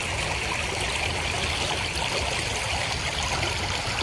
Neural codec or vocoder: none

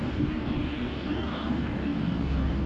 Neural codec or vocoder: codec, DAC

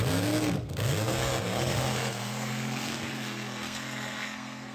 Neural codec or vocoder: codec, SNAC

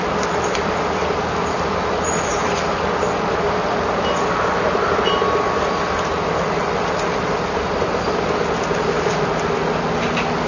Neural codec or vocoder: none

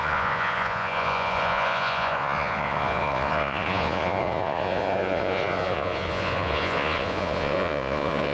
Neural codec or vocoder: vocoder, Vocos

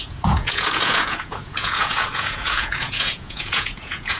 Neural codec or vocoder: vocoder, Vocos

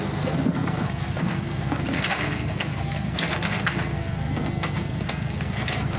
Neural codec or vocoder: codec, SNAC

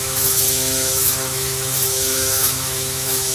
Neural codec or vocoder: autoencoder, DAC-VAE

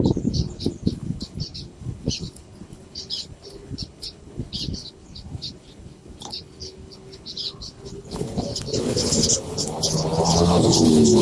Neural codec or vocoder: codec, HILCodec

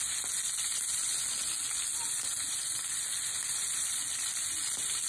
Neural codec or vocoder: none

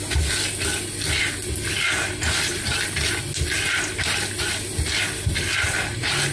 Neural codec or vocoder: none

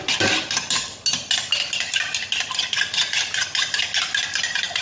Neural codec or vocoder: none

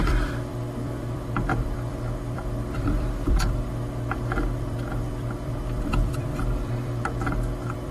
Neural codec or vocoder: vocoder, BigVGAN v2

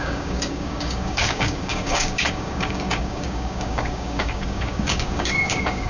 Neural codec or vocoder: codec, DAC